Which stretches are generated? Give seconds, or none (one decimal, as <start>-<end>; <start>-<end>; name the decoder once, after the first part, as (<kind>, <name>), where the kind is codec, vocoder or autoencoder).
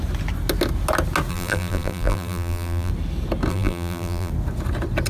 1.3-2.9 (vocoder, BigVGAN v2); 3.5-4.3